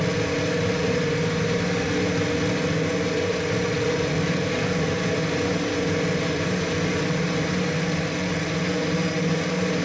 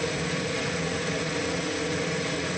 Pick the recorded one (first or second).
first